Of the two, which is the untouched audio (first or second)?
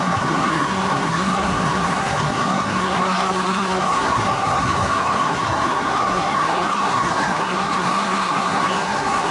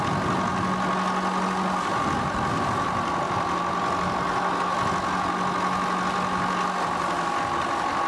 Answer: second